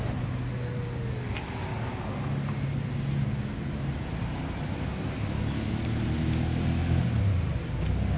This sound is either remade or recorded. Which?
recorded